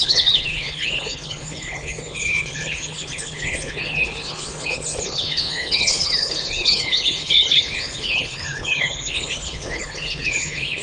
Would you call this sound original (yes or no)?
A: no